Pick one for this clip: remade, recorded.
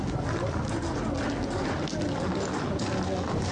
recorded